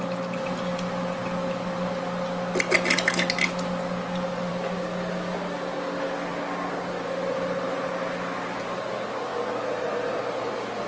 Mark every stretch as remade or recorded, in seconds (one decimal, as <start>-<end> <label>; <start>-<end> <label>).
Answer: 0.0-10.9 recorded